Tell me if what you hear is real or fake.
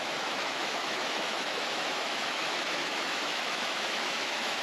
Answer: fake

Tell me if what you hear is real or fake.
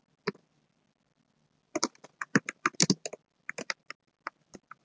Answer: real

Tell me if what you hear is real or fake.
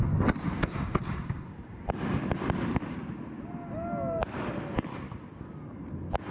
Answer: real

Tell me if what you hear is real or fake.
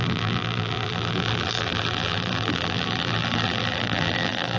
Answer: fake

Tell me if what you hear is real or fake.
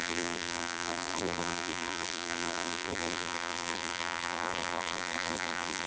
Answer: fake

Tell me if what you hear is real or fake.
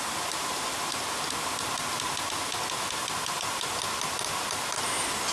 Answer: real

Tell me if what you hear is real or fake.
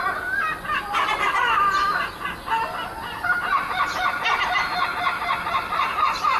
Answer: real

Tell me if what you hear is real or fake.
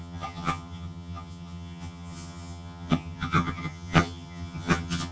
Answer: fake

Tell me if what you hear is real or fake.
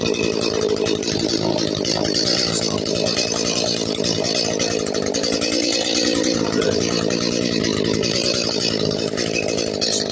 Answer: real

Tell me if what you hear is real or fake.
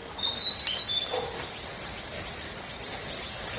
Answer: real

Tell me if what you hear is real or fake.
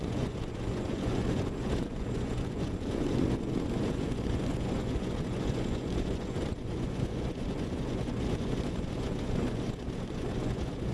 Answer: fake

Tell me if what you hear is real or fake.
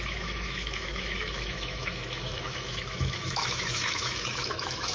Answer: fake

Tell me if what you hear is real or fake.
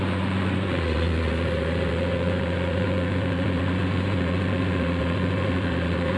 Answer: fake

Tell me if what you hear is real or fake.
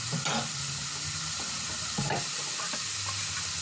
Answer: real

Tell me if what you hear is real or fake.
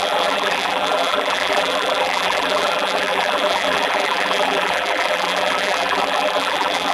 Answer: fake